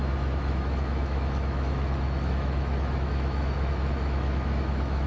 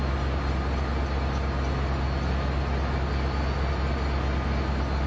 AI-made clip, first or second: first